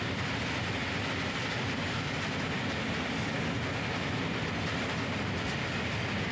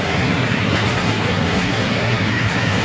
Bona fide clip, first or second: first